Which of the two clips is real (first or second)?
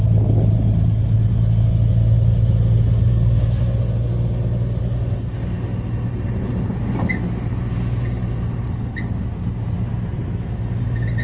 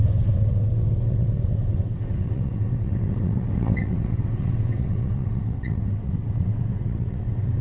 first